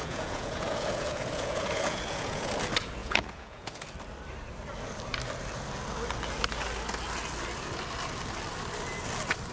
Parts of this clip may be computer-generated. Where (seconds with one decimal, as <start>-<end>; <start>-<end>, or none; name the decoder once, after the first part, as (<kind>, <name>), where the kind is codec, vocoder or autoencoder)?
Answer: 0.0-2.5 (vocoder, Vocos); 3.0-3.8